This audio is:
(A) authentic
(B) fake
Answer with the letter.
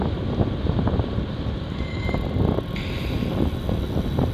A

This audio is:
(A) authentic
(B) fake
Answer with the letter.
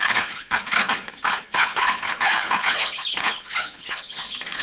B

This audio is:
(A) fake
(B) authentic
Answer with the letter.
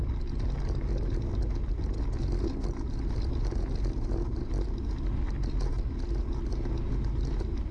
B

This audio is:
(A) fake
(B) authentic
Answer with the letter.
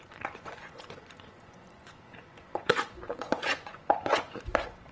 A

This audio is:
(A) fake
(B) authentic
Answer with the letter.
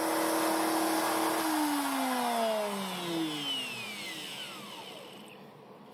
B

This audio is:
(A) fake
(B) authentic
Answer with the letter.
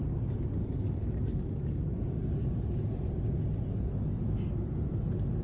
B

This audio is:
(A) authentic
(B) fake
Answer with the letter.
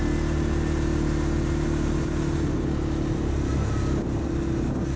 A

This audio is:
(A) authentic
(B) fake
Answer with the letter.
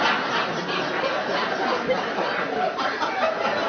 A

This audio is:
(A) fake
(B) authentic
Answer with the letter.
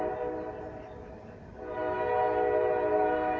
B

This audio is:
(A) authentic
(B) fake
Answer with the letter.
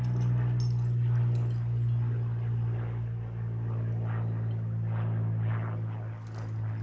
A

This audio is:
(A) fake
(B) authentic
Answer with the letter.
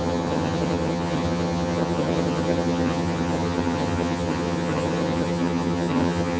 A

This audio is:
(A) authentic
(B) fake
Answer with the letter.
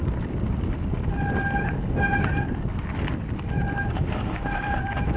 A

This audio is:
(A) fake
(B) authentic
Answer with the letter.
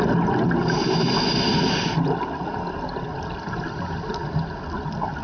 B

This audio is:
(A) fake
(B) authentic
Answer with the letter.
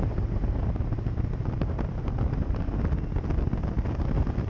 B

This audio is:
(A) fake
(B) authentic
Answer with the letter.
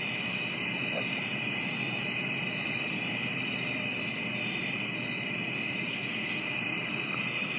B